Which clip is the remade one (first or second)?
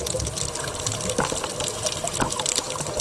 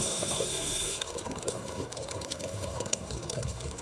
second